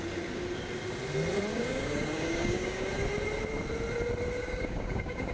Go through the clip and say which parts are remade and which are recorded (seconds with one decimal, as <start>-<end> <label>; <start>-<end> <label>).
0.0-1.5 recorded; 1.5-2.9 remade; 2.9-4.4 recorded; 4.4-5.3 remade